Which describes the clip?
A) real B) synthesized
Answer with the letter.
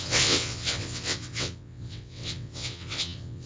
B